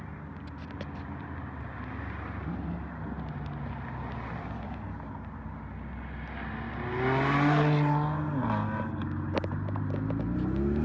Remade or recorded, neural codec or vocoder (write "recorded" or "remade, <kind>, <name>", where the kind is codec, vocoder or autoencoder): recorded